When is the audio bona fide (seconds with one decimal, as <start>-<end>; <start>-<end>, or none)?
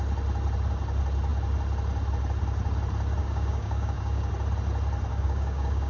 0.0-3.2; 4.3-5.1